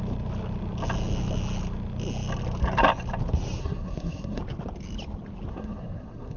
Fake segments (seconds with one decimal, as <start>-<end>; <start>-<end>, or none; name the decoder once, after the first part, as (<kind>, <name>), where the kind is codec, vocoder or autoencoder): 3.6-4.4 (codec, SNAC); 5.5-6.4